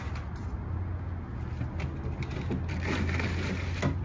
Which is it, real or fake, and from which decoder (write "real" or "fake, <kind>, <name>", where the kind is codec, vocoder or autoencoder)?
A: real